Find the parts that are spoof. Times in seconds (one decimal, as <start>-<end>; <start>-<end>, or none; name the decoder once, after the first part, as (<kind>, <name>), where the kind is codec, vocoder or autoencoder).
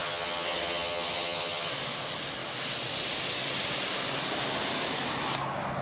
0.0-1.7 (vocoder, HiFi-GAN)